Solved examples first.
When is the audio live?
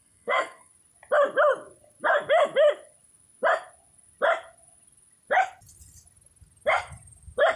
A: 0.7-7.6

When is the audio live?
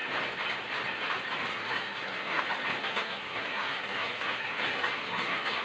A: 0.0-1.5; 2.4-2.8